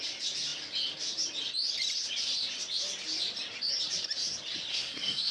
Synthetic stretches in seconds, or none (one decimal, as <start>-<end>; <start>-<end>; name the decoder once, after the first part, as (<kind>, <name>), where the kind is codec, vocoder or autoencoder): 4.7-5.3 (codec, SNAC)